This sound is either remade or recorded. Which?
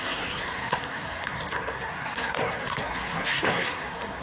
remade